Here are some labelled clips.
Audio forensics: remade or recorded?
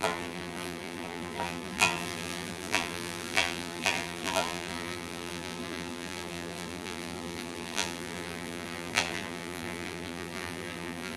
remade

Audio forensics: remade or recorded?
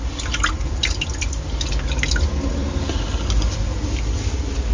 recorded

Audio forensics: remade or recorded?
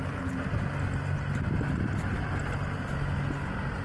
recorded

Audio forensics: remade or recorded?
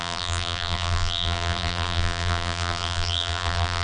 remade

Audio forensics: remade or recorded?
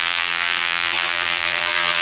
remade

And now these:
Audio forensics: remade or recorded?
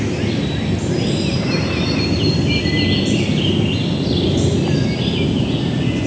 recorded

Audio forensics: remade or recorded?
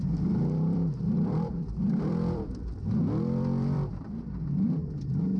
remade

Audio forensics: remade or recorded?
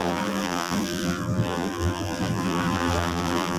remade